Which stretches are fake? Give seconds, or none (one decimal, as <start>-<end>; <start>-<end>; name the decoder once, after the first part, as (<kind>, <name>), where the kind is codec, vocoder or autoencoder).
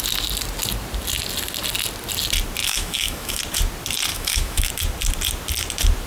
2.6-3.4 (autoencoder, DAC-VAE); 4.1-4.7